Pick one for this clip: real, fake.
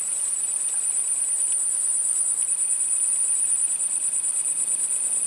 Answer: fake